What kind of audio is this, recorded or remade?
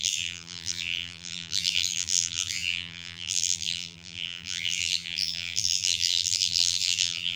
remade